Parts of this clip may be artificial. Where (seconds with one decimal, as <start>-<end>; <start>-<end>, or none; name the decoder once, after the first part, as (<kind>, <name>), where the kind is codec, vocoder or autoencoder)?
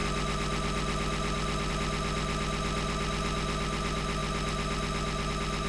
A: none